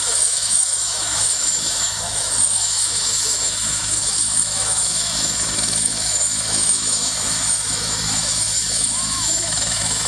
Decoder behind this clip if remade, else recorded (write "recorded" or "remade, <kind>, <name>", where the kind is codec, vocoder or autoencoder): remade, autoencoder, DAC-VAE